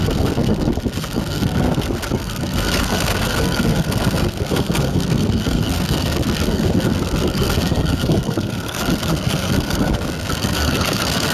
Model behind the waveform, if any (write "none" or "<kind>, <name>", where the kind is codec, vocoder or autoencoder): codec, SNAC